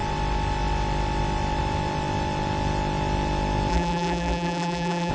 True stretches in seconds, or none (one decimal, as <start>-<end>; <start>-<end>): 0.0-3.7